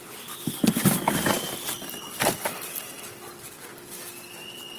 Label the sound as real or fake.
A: real